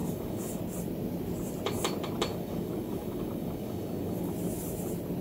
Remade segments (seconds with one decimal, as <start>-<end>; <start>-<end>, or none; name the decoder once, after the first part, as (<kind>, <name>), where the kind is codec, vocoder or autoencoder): 0.0-0.6 (codec, DAC); 2.3-4.3